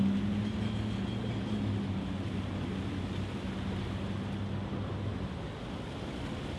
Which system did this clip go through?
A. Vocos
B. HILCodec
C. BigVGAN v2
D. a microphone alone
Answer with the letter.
D